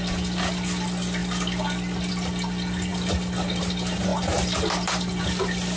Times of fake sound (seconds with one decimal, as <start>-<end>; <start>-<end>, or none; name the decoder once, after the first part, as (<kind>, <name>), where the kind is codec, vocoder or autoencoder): none